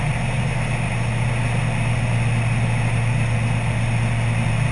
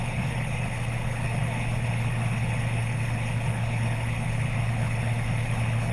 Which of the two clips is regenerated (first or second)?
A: second